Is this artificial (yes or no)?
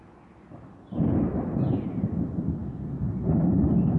no